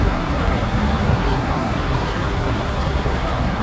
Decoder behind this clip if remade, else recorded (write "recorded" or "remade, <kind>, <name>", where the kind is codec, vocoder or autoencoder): remade, codec, SNAC